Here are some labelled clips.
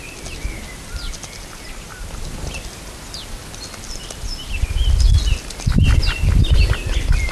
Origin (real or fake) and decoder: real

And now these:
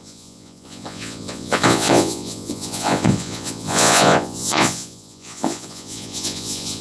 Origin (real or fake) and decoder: fake, vocoder, Vocos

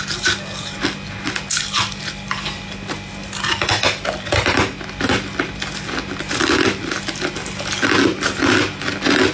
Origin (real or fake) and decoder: real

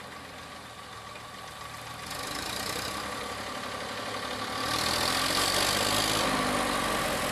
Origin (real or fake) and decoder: real